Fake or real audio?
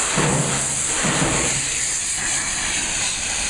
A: fake